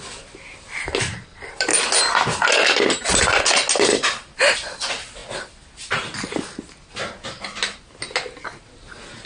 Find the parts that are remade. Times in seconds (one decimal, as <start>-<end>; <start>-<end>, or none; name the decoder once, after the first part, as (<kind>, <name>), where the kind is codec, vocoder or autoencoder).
none